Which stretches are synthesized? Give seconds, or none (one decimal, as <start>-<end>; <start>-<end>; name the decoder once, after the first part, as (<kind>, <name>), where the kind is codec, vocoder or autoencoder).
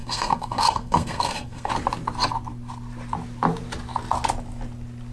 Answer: 0.0-1.7 (codec, SNAC)